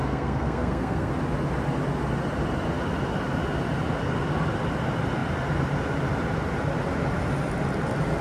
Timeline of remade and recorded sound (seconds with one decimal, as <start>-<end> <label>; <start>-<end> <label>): 0.0-1.1 remade; 1.1-8.2 recorded